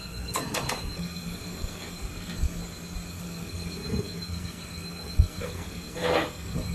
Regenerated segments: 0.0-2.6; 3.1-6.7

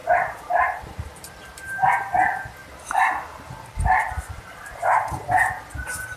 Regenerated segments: none